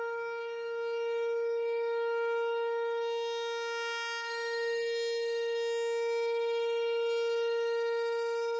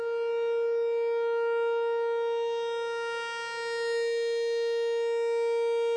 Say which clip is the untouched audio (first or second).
second